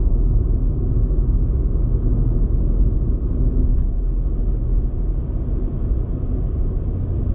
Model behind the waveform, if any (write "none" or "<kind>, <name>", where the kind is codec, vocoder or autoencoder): none